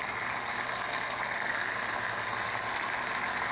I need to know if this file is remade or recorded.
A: recorded